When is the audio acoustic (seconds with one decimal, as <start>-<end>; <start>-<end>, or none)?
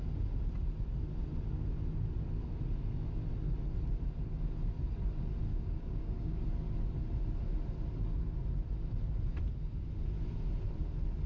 0.0-5.5; 6.4-11.3